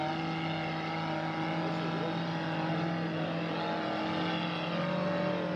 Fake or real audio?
real